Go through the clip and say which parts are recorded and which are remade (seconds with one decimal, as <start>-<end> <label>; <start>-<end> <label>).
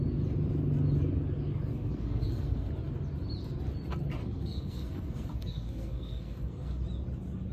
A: 0.0-1.7 recorded; 1.7-2.7 remade; 2.7-4.2 recorded; 4.2-6.8 remade; 6.8-7.5 recorded